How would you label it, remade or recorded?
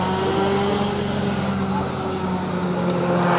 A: recorded